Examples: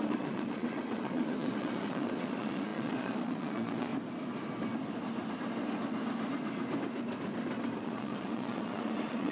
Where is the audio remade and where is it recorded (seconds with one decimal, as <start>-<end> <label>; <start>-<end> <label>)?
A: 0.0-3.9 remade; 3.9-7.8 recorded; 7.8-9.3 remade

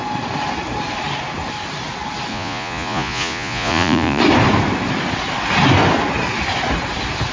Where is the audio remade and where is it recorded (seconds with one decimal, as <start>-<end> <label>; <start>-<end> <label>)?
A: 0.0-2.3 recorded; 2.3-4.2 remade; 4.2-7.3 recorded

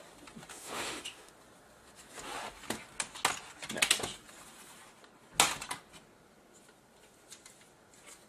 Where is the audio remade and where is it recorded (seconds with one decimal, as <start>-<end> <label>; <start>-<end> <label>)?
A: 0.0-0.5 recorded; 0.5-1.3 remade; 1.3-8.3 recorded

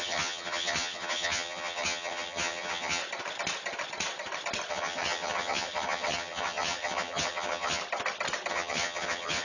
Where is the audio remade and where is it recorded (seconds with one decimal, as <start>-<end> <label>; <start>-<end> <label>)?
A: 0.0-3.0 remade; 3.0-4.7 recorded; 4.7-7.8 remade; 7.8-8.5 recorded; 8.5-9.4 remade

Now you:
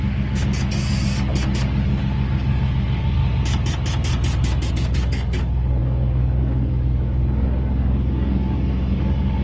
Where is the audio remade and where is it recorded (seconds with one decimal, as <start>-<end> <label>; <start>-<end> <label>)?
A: 0.0-3.2 remade; 3.2-4.7 recorded; 4.7-9.4 remade

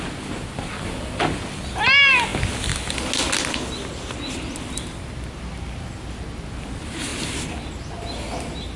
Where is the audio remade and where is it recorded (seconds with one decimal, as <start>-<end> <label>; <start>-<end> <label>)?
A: 0.0-8.8 recorded

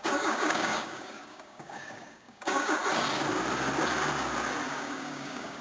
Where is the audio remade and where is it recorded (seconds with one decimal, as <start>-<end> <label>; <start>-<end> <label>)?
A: 0.0-2.8 remade; 2.8-4.7 recorded; 4.7-5.6 remade